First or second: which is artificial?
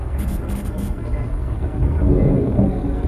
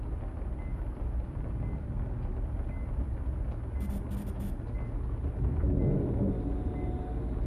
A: first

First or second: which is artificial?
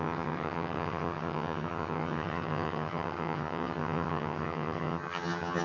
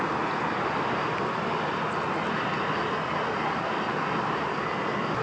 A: first